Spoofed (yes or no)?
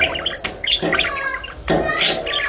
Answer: no